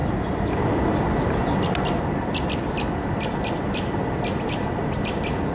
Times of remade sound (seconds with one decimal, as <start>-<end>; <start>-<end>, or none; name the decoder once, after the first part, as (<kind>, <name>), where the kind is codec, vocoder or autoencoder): none